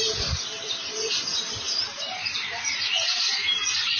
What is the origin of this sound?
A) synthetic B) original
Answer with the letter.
A